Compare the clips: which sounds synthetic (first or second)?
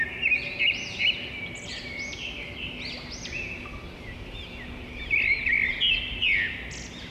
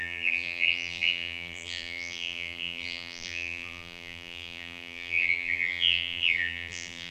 second